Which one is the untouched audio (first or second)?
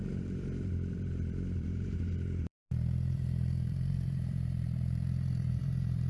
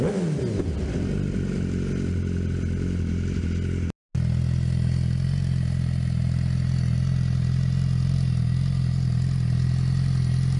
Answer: second